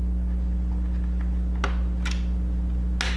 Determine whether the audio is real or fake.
real